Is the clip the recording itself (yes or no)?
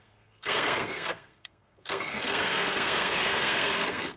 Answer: no